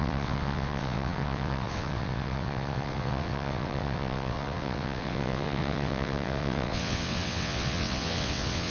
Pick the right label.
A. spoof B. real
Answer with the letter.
A